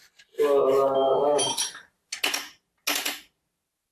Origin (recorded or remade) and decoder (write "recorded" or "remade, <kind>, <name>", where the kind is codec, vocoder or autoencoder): recorded